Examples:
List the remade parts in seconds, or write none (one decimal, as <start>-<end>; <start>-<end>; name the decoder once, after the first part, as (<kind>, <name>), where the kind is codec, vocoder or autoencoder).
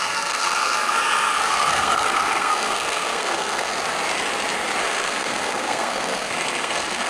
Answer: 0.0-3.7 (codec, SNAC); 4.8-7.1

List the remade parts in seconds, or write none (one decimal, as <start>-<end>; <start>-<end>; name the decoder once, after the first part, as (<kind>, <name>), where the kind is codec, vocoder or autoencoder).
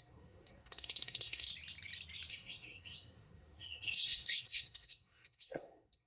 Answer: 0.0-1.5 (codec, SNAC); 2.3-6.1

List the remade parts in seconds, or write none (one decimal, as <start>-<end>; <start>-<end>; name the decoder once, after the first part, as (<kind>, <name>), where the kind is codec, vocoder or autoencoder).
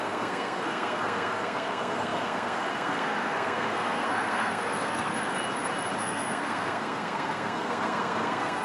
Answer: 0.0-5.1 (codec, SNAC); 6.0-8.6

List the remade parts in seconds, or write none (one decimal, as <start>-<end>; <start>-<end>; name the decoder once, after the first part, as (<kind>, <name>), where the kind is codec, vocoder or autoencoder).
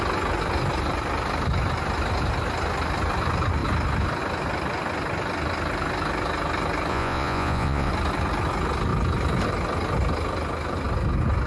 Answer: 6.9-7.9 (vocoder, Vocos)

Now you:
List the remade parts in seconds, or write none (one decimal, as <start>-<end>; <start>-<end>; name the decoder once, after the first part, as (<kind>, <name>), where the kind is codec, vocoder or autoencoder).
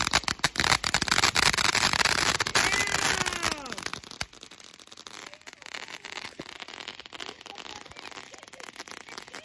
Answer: none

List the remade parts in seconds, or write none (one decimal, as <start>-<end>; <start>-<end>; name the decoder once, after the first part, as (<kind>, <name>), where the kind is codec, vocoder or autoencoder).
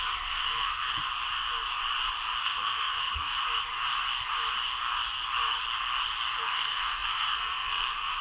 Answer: 0.0-0.9 (codec, SNAC); 2.4-3.3; 6.4-8.2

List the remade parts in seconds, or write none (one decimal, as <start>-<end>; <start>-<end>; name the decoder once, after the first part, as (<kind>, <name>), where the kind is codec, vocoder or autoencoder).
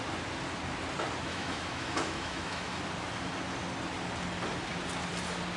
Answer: 1.3-2.8 (autoencoder, DAC-VAE)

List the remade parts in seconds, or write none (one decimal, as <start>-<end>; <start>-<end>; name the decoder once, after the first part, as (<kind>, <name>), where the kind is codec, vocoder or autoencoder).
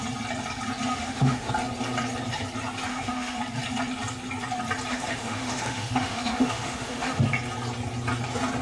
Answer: 0.9-1.5 (autoencoder, DAC-VAE); 2.9-3.4; 4.9-7.2